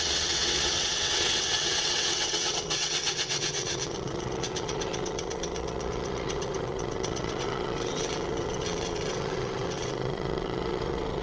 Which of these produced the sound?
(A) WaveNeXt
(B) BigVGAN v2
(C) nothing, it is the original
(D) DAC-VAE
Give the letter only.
A